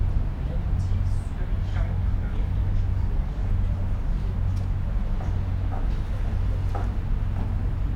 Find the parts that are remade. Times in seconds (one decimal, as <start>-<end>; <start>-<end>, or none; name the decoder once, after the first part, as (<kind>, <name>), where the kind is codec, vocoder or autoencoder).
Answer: 1.7-3.5 (codec, DAC)